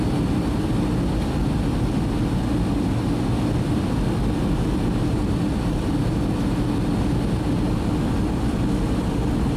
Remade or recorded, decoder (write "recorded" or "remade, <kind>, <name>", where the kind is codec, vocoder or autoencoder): recorded